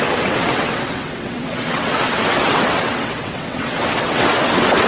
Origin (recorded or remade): remade